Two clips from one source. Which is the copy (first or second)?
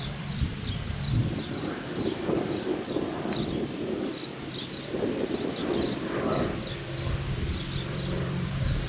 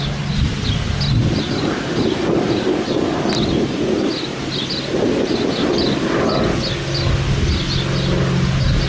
first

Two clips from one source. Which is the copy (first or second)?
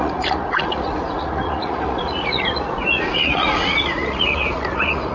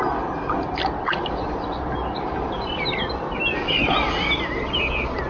first